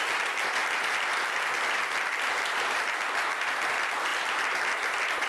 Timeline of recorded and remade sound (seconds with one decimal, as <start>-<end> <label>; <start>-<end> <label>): 0.0-5.3 recorded